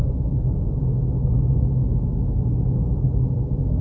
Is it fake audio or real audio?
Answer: fake